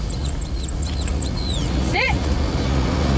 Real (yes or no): no